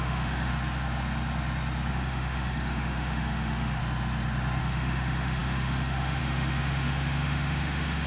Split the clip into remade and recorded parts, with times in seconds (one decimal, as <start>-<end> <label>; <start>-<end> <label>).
0.0-0.5 remade; 0.5-1.9 recorded; 1.9-3.8 remade; 3.8-4.6 recorded; 4.6-8.1 remade